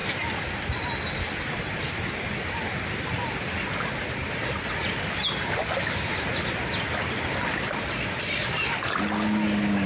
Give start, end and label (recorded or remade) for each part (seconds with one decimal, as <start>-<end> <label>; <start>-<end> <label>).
0.0-9.9 recorded